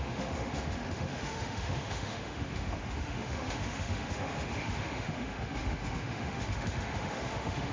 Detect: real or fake fake